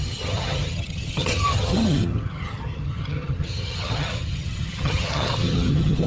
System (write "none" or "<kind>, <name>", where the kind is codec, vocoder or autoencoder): vocoder, HiFi-GAN